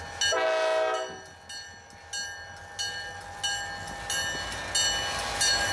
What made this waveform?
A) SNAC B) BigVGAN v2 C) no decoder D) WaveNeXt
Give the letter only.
C